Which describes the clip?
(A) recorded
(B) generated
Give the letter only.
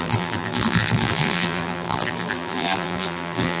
B